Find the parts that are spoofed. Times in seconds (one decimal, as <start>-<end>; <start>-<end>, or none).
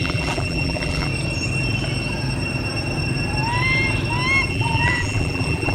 0.0-1.1; 4.5-5.7